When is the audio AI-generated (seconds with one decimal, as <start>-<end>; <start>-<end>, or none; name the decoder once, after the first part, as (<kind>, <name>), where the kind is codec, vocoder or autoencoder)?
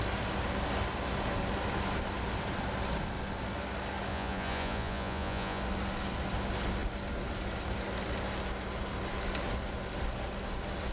4.1-5.6 (vocoder, Vocos)